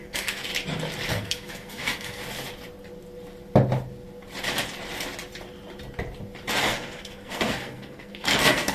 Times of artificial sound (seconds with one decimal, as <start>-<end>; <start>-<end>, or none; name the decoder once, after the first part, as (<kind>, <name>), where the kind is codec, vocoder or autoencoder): 0.0-0.5 (codec, SNAC); 1.1-2.2; 6.6-8.7